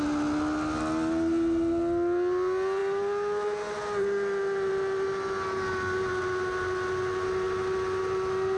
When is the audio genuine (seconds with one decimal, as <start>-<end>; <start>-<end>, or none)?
0.0-8.6